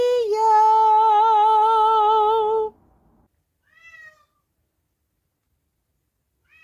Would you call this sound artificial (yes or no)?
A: no